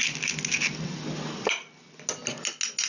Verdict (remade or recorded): recorded